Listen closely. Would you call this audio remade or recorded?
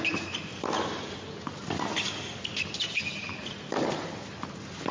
recorded